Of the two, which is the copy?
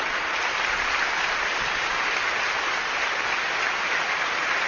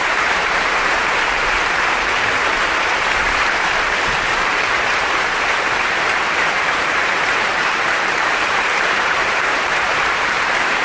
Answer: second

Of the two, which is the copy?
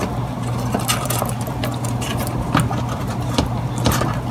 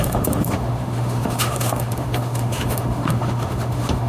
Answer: second